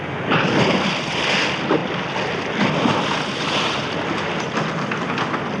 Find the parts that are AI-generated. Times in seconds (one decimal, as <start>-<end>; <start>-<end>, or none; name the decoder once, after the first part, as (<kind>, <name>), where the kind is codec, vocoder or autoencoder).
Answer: none